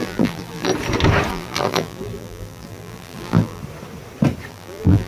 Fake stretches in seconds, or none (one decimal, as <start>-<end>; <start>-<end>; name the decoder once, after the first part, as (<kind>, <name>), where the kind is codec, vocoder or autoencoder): 0.0-0.7 (vocoder, BigVGAN v2); 1.3-3.6; 4.5-5.1